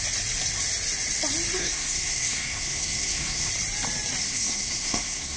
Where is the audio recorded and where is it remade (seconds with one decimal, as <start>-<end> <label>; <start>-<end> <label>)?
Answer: 0.0-1.6 recorded; 1.6-3.5 remade; 3.5-4.2 recorded; 4.2-5.4 remade